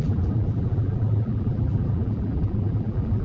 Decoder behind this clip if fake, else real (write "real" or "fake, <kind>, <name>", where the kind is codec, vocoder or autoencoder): fake, vocoder, BigVGAN v2